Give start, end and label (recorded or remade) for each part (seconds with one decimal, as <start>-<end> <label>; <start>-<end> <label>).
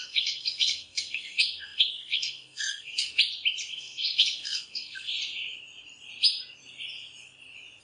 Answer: 0.0-3.2 remade; 3.2-3.7 recorded; 3.7-5.1 remade; 5.1-7.8 recorded